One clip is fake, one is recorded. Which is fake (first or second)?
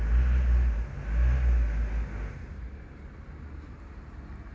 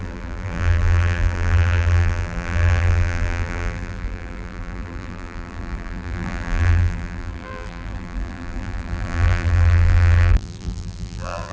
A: second